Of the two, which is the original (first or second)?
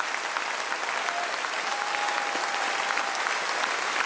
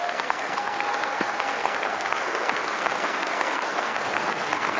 first